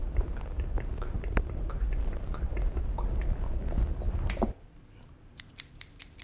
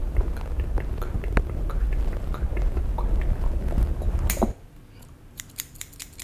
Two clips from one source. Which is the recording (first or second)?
second